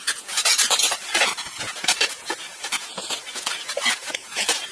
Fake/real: fake